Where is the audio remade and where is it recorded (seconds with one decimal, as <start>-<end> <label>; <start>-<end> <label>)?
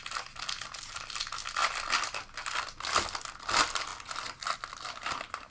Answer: 0.0-5.5 recorded